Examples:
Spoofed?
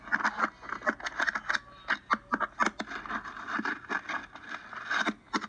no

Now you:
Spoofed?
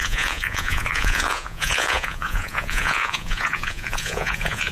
yes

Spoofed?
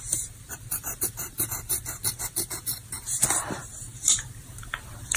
yes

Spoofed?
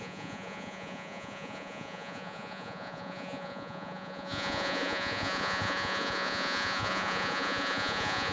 yes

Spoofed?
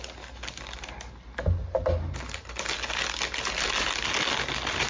no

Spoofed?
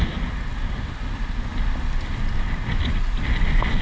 no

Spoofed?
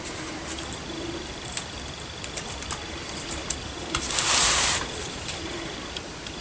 yes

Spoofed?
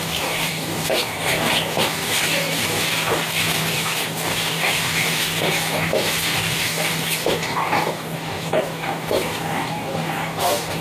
yes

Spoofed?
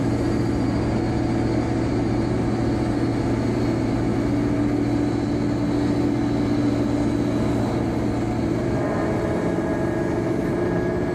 no